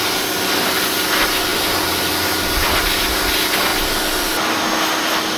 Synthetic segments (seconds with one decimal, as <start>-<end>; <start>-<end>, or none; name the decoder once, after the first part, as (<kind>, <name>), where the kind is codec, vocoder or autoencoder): 1.5-2.1 (vocoder, BigVGAN v2); 3.7-4.3